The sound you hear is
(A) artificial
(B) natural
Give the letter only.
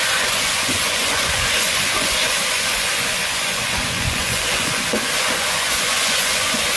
A